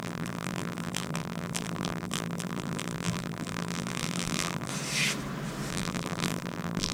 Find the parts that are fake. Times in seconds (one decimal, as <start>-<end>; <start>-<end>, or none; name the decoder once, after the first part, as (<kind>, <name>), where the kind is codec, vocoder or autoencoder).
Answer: 0.0-4.7 (vocoder, BigVGAN v2); 5.7-6.9